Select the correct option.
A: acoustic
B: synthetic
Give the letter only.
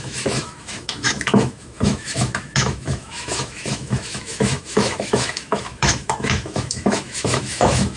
B